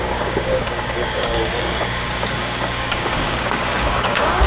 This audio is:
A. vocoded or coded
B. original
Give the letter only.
A